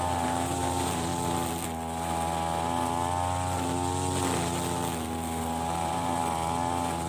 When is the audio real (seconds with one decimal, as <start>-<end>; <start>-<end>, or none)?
1.1-5.4; 6.2-7.1

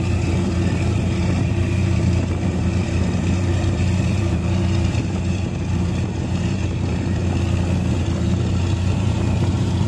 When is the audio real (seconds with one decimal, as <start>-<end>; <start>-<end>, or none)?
7.2-7.9

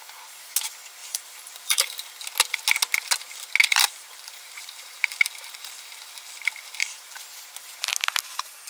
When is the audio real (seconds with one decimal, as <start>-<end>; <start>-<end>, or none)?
0.0-1.0; 2.1-3.6; 7.2-8.7